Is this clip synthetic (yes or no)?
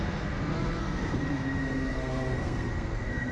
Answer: yes